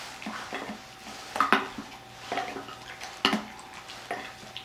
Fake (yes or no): no